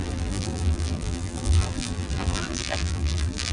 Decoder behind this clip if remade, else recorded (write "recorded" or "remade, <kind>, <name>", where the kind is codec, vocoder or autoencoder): remade, vocoder, BigVGAN v2